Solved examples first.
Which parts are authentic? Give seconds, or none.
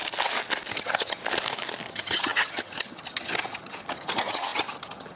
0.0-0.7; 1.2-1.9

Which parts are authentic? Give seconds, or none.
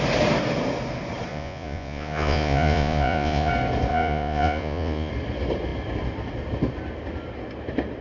0.0-1.3; 3.5-3.9; 5.1-8.0